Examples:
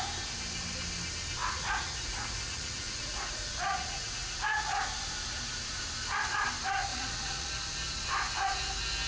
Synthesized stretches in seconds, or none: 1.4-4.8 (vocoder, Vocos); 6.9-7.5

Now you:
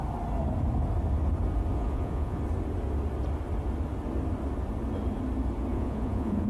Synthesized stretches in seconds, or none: 1.7-2.4 (vocoder, Vocos); 5.7-6.5

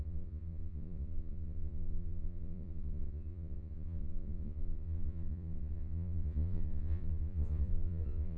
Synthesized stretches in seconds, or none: 0.0-8.4 (vocoder, Vocos)

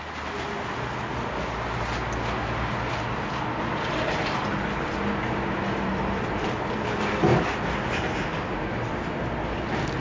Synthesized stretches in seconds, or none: none